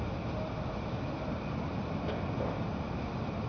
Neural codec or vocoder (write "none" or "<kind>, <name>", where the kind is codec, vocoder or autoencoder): none